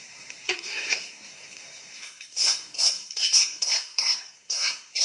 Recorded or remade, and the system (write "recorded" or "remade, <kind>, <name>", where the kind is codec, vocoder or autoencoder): remade, codec, SNAC